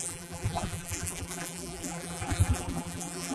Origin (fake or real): fake